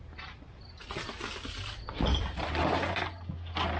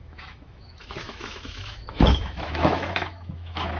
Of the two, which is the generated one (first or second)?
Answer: second